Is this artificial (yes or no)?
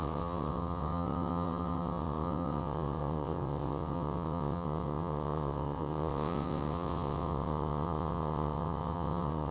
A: yes